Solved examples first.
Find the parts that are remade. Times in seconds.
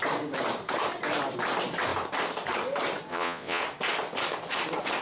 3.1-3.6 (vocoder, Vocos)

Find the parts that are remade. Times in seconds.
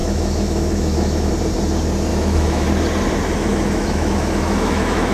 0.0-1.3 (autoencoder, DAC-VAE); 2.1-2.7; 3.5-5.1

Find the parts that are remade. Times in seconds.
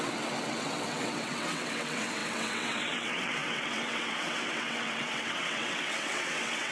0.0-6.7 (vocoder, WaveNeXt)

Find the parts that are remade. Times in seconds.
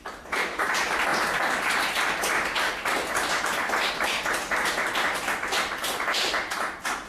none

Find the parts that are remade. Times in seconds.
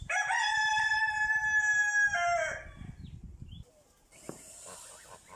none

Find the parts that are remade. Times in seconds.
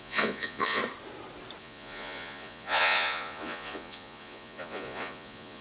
0.0-0.8 (vocoder, Vocos); 1.6-5.6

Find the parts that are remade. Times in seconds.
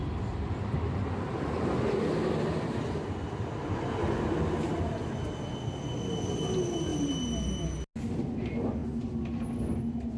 none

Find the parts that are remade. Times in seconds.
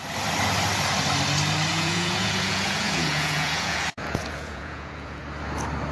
1.7-5.2 (vocoder, Vocos)